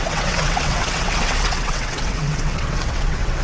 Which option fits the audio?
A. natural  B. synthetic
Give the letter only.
B